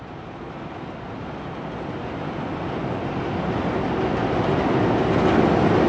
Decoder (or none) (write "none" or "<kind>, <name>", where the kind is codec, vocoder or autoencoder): none